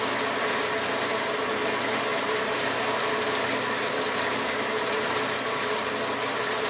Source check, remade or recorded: recorded